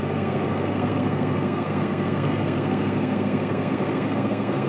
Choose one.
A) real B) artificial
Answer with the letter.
B